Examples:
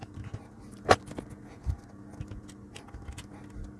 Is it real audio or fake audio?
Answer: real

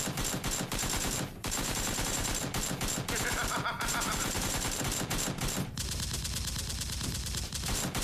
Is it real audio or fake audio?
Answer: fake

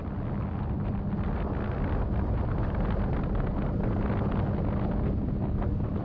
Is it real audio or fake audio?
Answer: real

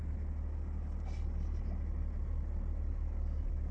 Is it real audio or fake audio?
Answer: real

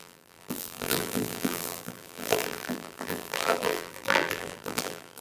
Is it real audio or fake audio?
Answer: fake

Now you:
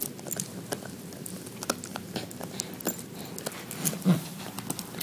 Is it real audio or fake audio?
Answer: real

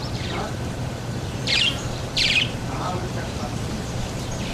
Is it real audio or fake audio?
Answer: fake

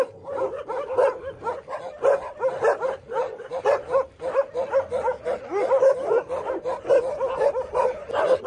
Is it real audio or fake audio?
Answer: real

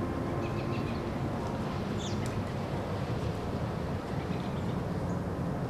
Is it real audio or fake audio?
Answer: real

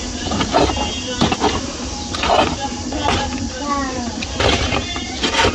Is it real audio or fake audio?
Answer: fake